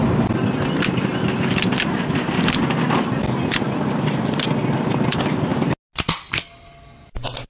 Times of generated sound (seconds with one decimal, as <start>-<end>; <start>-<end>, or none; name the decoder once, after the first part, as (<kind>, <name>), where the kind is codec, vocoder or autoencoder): none

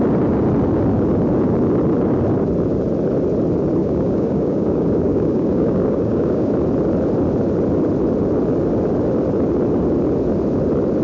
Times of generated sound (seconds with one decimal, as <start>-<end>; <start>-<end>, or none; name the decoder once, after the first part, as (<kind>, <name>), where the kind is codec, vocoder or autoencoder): 3.8-6.5 (codec, DAC)

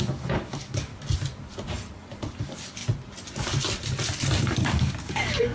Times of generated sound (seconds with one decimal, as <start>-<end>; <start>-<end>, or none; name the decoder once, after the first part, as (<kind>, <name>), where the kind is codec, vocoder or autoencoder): 0.0-0.9 (codec, DAC); 2.4-2.8; 4.4-5.5

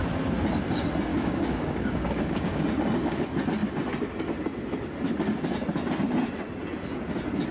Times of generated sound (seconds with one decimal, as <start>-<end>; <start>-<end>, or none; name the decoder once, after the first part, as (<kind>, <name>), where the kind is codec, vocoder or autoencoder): 1.1-2.6 (codec, DAC)

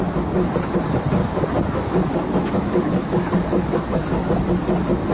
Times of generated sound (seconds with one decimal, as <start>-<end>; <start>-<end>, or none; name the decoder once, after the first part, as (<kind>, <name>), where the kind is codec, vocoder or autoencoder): 1.2-4.3 (codec, DAC)

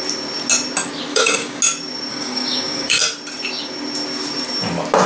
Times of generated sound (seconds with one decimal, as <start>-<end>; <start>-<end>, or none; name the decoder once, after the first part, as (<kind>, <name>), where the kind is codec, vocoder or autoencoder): 1.1-1.6 (codec, DAC); 2.1-3.0

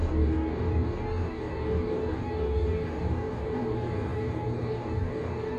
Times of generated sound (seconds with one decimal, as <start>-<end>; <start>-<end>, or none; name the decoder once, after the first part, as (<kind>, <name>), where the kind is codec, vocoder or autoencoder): 0.0-5.6 (codec, DAC)